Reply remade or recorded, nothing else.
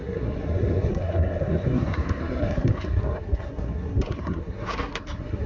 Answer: remade